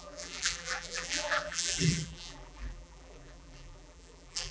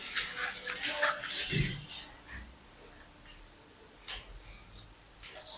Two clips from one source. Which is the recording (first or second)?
second